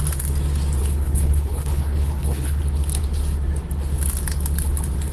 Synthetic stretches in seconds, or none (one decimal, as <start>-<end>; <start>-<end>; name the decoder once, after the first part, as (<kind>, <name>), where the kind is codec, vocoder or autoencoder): 0.8-2.6 (codec, HILCodec)